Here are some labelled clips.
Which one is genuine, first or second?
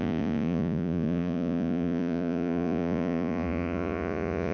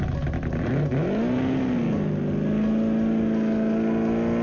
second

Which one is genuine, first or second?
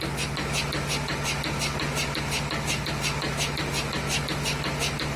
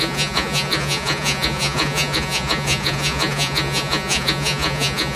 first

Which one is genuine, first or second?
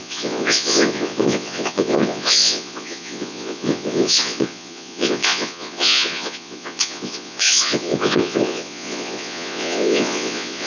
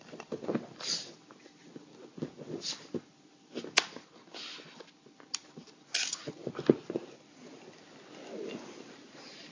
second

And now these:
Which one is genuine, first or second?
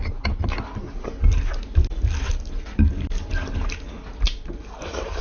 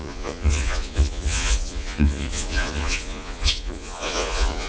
first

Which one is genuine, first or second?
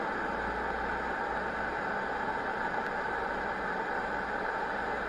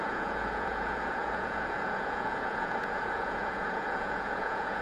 first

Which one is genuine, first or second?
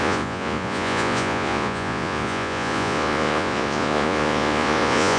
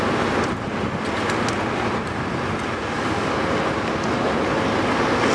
second